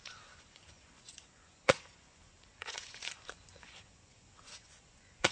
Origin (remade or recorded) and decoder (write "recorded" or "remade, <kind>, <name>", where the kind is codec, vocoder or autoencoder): remade, vocoder, Vocos